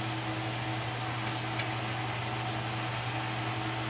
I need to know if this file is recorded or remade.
recorded